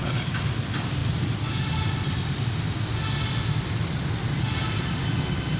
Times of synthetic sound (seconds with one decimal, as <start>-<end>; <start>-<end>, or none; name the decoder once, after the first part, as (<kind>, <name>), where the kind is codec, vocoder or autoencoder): none